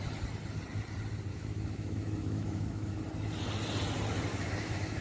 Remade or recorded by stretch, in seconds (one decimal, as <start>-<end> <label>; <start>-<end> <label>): 0.0-1.3 recorded; 1.3-3.0 remade; 3.0-4.3 recorded; 4.3-5.0 remade